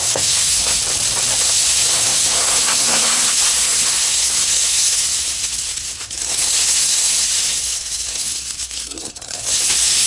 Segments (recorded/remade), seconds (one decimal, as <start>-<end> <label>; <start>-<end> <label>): 0.0-0.8 remade; 0.8-1.4 recorded; 1.4-10.1 remade